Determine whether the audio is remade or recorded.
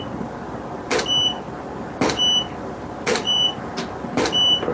recorded